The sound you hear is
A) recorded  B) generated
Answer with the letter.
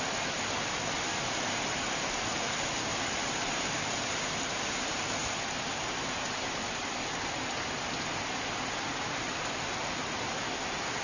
A